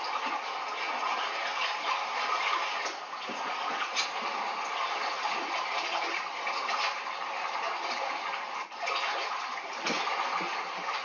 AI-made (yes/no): no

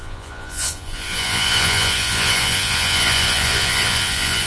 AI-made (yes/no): yes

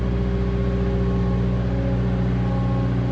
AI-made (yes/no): no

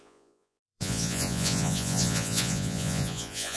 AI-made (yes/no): yes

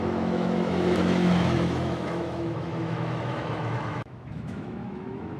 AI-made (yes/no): yes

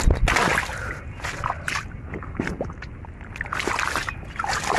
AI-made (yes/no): no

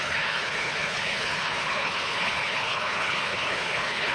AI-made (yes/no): yes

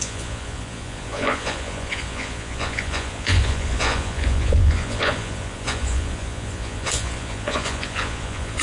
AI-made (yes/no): yes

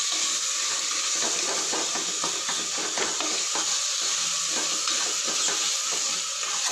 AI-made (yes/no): no